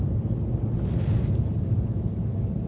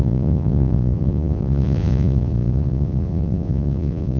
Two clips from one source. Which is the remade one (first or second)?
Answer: second